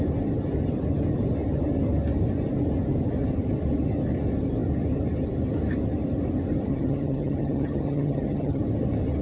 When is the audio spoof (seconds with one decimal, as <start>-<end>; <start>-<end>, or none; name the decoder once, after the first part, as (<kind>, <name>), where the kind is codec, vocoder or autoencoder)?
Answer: 6.7-8.6 (vocoder, HiFi-GAN)